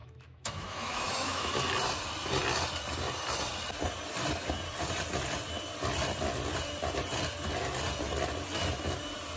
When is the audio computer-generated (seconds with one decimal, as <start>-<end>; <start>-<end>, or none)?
0.0-1.5